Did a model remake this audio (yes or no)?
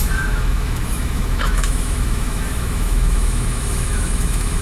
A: yes